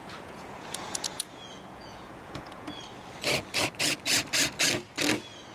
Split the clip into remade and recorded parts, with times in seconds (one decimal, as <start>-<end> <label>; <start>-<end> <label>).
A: 0.0-2.8 remade; 2.8-5.5 recorded